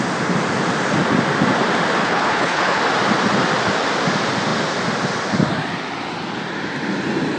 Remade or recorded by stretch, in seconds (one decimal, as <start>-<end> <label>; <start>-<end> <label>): 0.0-2.0 recorded; 2.0-2.8 remade; 2.8-7.4 recorded